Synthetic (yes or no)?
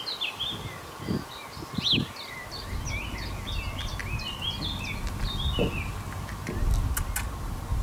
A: no